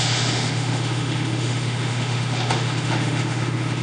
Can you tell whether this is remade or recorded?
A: remade